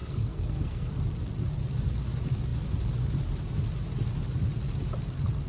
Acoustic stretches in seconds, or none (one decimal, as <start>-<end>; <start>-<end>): 0.9-5.5